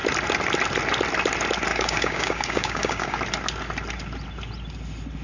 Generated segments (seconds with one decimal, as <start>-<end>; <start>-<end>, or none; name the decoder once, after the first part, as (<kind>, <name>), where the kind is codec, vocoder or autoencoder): 1.7-3.2 (codec, DAC)